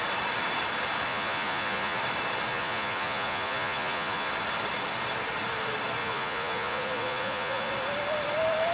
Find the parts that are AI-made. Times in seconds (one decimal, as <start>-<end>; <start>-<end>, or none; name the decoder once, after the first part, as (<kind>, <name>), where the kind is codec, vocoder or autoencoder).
1.1-2.0 (vocoder, Vocos); 2.5-4.3; 6.0-7.7